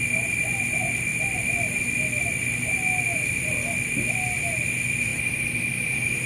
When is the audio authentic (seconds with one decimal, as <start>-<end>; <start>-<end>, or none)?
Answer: 0.0-6.3